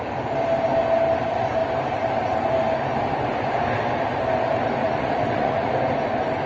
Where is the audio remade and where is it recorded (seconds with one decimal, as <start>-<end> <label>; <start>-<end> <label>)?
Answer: 0.0-4.8 recorded; 4.8-5.7 remade; 5.7-6.5 recorded